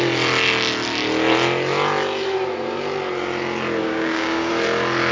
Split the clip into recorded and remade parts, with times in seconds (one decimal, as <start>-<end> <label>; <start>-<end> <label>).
0.0-3.8 recorded; 3.8-4.5 remade; 4.5-5.1 recorded